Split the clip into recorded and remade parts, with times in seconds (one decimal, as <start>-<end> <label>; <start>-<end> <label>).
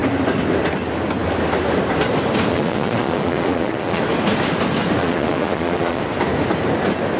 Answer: 0.0-2.5 recorded; 2.5-4.0 remade; 4.0-5.0 recorded; 5.0-6.0 remade; 6.0-7.2 recorded